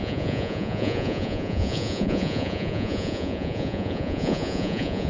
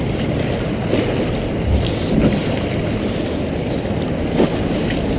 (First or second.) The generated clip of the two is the first